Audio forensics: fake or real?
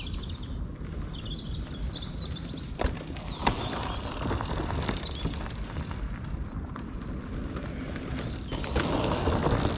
real